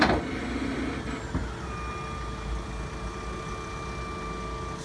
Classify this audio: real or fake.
real